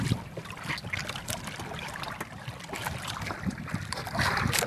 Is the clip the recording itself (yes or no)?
yes